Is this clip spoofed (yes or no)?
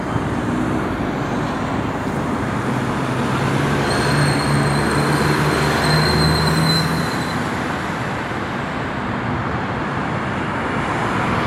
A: yes